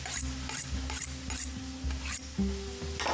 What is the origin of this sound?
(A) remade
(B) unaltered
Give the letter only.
B